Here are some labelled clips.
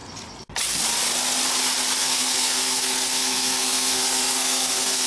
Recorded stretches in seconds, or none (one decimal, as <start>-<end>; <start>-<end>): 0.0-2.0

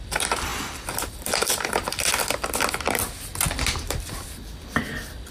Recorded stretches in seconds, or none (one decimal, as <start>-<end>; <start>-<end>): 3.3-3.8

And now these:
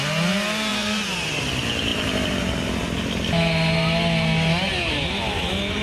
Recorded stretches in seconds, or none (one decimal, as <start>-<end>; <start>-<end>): 0.0-0.7; 1.4-5.8

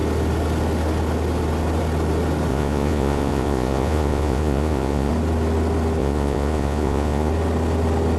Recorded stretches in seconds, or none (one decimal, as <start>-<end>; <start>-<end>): 0.0-2.5; 5.1-6.0; 7.3-8.2